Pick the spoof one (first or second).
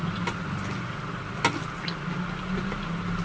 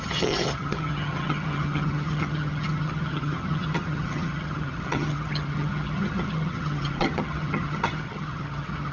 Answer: second